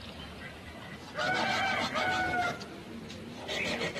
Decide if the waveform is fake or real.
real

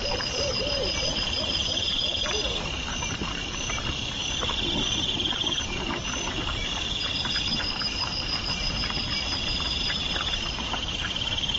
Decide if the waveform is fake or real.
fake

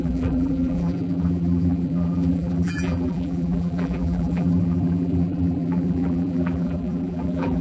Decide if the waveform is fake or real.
fake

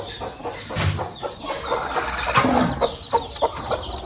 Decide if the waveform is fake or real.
real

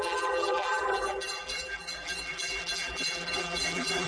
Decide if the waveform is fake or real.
fake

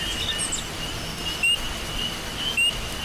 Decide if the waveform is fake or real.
real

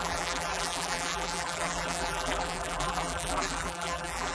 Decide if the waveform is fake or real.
fake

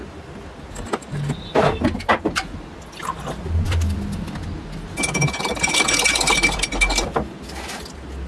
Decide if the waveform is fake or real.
real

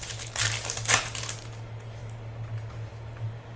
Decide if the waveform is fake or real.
real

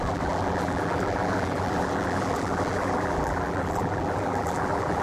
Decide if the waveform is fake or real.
fake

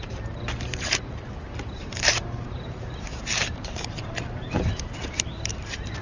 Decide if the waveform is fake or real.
fake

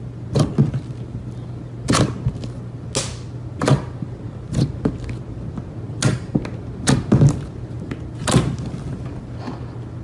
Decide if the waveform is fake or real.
real